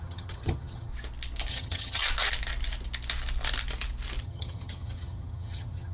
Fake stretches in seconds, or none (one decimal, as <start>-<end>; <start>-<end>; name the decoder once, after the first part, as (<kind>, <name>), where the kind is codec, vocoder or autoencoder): 0.0-0.9 (vocoder, HiFi-GAN); 1.5-2.0; 4.2-5.9